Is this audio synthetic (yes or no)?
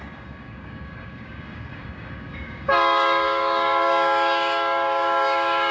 yes